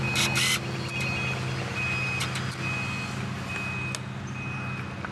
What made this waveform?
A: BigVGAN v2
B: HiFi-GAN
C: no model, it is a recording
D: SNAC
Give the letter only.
C